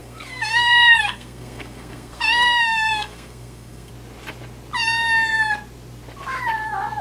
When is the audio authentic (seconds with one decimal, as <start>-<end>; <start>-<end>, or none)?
3.9-7.0

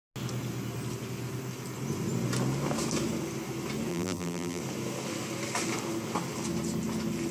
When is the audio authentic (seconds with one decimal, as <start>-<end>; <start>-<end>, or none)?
0.0-3.9; 4.6-7.3

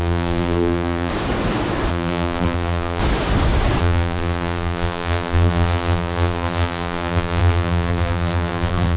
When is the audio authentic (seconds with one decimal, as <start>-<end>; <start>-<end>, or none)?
1.1-1.9; 3.0-3.8

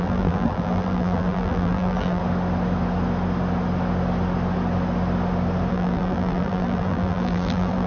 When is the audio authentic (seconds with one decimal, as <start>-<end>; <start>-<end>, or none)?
2.2-5.7

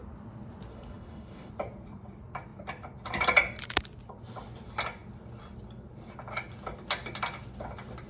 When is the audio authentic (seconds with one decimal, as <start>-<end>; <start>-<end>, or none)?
0.0-0.7; 1.5-8.1